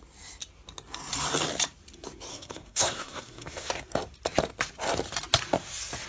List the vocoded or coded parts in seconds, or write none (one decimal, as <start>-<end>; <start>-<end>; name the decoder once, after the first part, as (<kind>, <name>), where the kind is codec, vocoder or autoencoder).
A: 2.3-3.7 (codec, SNAC)